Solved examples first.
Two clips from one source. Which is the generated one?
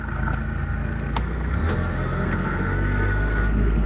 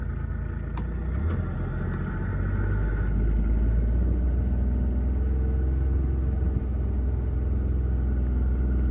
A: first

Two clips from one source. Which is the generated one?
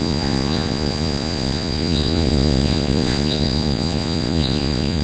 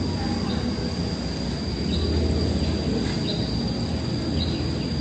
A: first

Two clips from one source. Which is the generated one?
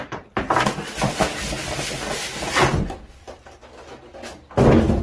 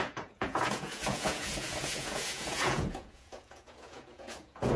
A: second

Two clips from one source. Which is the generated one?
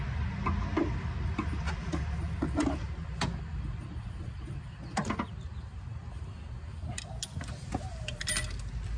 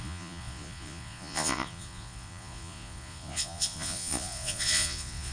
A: second